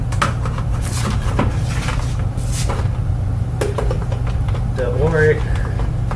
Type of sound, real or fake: real